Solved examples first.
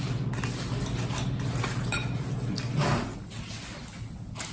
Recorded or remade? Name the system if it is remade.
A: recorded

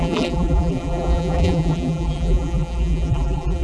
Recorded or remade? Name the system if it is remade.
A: remade, vocoder, BigVGAN v2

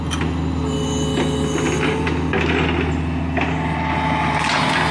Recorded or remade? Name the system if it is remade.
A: recorded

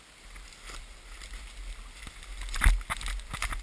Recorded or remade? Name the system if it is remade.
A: recorded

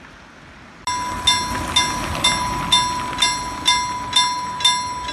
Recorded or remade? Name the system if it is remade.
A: recorded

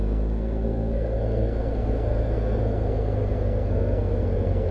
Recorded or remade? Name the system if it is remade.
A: remade, codec, SNAC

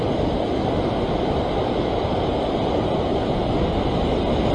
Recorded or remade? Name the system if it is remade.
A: recorded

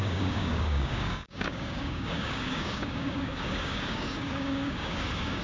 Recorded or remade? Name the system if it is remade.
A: remade, codec, DAC